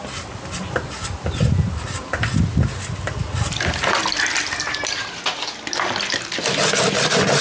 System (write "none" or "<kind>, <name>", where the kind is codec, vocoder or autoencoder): none